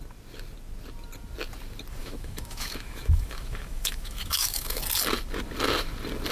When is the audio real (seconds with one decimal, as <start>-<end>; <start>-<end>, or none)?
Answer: 0.0-2.0; 4.8-6.3